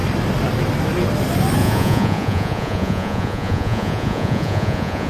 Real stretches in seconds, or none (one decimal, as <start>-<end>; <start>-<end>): 0.0-1.6